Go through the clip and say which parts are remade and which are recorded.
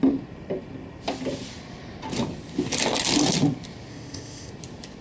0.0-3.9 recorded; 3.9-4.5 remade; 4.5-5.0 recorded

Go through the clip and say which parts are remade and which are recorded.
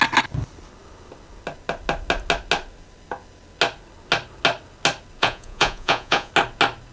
0.0-5.2 recorded; 5.2-6.3 remade; 6.3-6.9 recorded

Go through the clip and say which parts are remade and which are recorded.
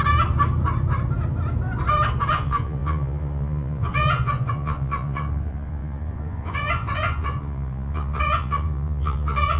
0.0-2.3 recorded; 2.3-9.6 remade